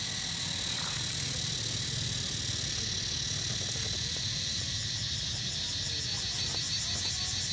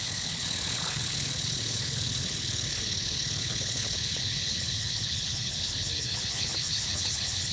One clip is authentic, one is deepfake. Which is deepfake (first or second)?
second